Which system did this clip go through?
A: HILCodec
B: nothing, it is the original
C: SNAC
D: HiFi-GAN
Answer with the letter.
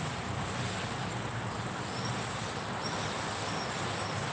B